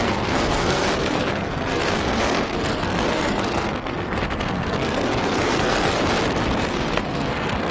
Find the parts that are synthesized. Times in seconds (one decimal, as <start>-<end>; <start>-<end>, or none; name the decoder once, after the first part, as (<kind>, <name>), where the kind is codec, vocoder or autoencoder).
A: 0.0-6.0 (codec, SNAC); 6.6-7.7

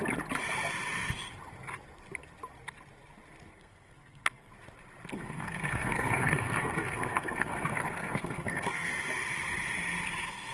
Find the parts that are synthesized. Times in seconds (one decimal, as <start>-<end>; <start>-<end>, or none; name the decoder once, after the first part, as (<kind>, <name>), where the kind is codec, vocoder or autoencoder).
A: 3.5-4.5 (codec, SNAC); 5.1-8.9